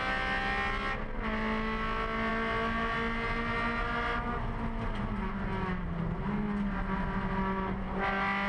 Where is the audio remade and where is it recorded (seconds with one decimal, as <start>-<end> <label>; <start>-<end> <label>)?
0.0-8.5 recorded